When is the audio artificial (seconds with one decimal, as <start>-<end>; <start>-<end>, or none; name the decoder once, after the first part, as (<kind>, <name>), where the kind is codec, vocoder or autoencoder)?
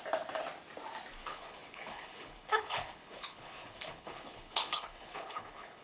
1.2-5.8 (codec, HILCodec)